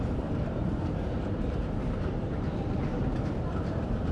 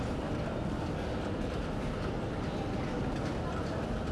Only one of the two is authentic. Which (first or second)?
second